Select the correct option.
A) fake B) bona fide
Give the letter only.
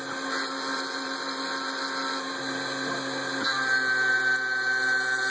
B